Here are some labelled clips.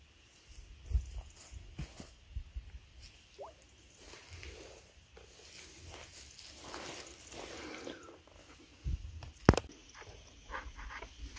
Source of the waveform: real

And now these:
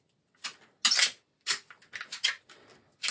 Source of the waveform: real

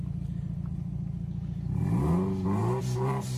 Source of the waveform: real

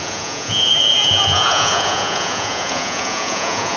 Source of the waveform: fake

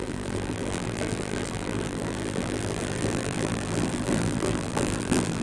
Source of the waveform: fake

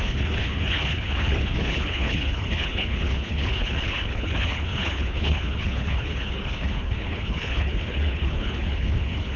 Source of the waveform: fake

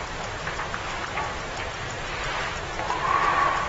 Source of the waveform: fake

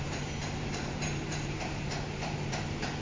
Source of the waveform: fake